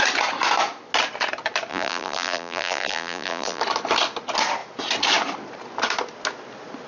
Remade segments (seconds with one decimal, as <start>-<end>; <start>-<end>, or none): 1.7-3.6